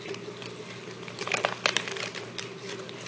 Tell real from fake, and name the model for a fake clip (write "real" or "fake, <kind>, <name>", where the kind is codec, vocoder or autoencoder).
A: real